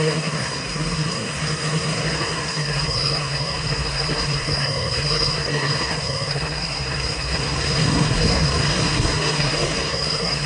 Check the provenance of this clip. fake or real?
fake